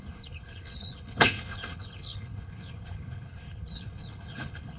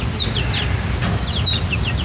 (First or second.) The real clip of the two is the second